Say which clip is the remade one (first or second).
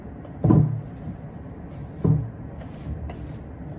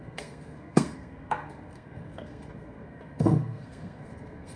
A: second